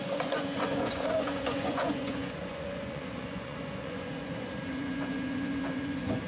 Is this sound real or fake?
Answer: fake